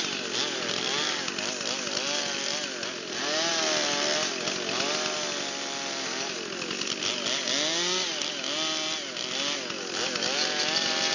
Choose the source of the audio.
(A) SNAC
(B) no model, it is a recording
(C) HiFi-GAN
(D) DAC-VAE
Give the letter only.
B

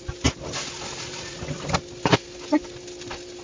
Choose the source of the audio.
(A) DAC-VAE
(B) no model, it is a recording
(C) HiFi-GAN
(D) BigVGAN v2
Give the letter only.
B